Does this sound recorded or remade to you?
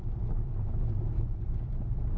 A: recorded